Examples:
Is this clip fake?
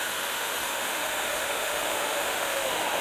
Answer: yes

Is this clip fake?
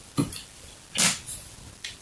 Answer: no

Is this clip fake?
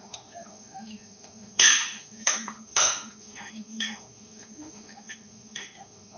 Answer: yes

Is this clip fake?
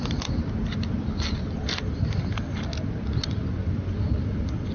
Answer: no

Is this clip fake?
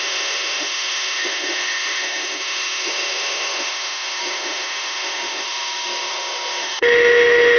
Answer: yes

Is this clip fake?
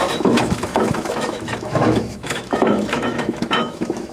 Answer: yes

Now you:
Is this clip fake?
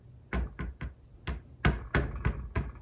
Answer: no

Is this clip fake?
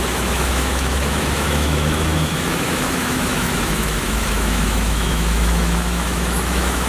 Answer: yes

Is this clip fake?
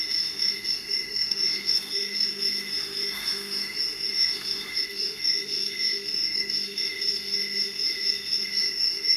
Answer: yes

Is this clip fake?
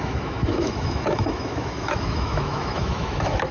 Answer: yes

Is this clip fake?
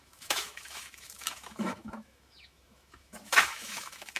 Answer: yes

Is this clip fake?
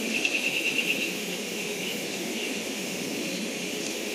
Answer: yes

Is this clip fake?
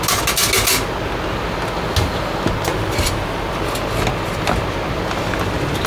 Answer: no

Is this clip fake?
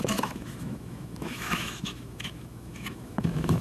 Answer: yes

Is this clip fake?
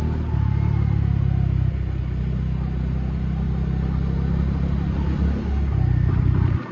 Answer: no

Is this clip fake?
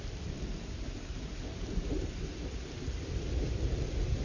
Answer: no